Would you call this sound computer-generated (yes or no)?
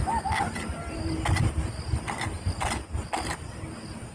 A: no